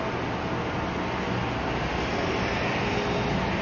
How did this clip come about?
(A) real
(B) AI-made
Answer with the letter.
A